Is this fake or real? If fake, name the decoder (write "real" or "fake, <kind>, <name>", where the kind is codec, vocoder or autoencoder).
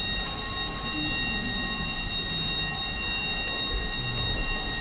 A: real